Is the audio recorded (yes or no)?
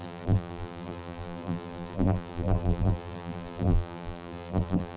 no